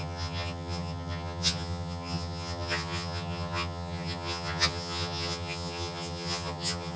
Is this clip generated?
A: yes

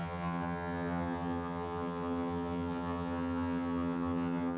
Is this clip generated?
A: yes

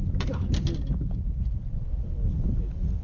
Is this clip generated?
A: no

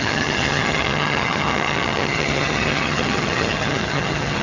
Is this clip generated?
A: yes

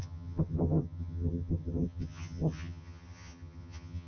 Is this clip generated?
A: yes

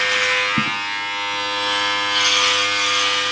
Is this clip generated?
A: no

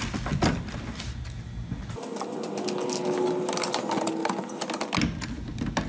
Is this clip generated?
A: no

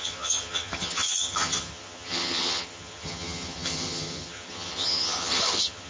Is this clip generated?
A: yes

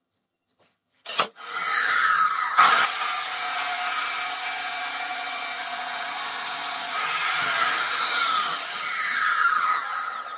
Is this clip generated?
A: yes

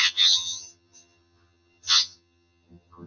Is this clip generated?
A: yes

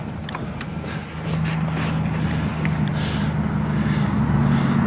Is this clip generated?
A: no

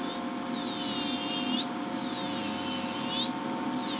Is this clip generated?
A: no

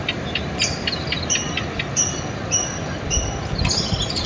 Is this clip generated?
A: no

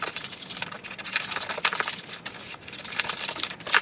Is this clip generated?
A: no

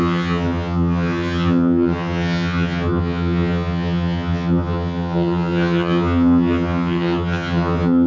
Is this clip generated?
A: yes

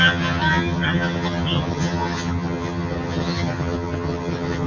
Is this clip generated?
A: yes